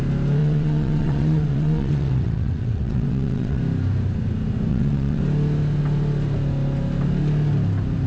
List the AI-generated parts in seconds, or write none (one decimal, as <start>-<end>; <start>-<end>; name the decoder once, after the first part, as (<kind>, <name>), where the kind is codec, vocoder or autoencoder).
0.4-3.6 (vocoder, WaveNeXt); 4.7-5.2